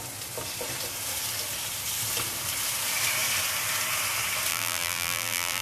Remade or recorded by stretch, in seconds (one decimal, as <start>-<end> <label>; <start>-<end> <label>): 0.0-4.5 recorded; 4.5-5.6 remade